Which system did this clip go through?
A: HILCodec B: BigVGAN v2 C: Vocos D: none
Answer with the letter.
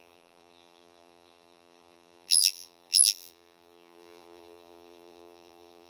B